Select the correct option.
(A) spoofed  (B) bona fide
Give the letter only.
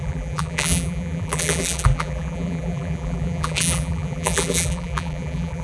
A